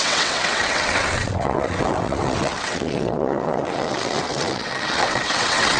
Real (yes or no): no